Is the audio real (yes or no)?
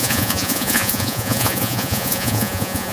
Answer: no